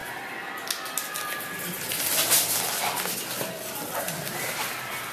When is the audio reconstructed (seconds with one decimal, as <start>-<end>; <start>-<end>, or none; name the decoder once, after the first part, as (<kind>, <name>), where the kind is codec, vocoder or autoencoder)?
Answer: none